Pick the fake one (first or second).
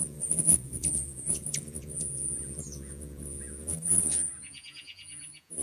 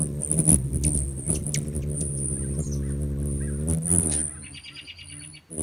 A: first